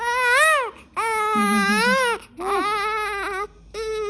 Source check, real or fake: real